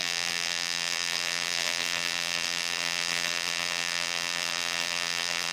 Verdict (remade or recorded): remade